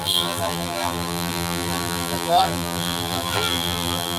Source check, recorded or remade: remade